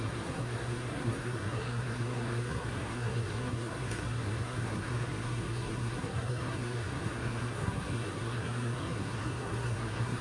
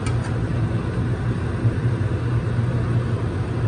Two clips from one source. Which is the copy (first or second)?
first